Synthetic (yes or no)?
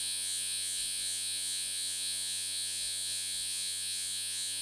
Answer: yes